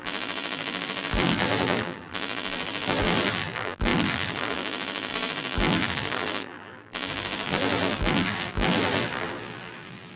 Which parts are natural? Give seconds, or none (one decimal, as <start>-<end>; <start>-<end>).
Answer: none